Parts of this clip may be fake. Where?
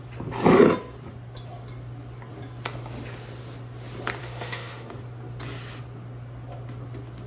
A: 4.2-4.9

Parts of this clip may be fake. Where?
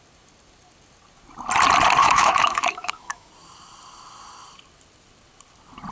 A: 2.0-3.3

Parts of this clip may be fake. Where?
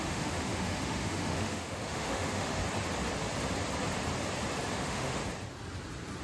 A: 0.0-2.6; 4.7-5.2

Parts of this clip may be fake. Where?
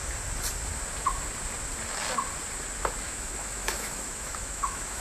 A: 3.0-5.0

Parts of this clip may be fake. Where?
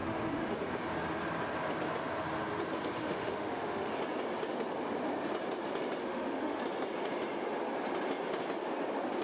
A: 0.0-0.6; 3.0-3.9; 6.0-6.6